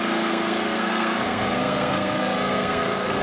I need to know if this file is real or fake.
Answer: fake